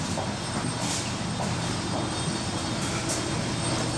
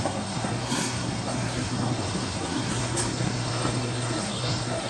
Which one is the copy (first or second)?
second